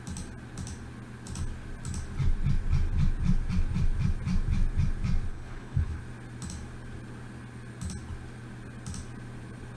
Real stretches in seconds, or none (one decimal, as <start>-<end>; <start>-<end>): 0.0-5.3; 6.0-9.8